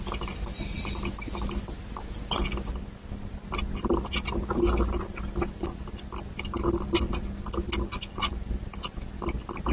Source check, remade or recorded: recorded